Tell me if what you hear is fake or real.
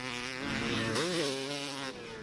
real